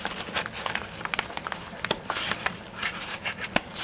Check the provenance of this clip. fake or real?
real